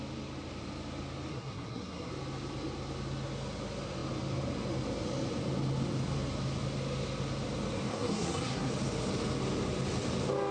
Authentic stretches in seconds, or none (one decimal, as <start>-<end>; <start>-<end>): 0.0-1.3; 2.1-7.9; 8.7-10.5